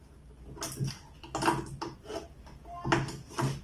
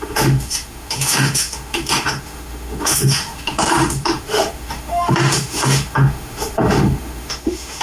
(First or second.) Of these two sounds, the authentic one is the first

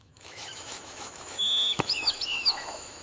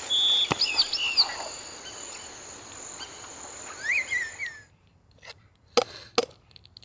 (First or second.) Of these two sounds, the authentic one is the second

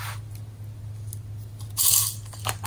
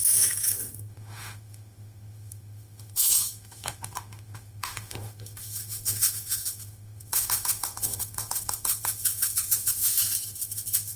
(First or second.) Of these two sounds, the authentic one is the first